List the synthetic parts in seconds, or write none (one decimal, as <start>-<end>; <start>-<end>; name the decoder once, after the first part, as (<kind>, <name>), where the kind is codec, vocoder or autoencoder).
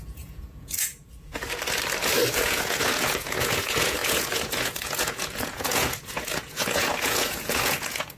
0.0-1.3 (vocoder, Vocos); 2.3-8.2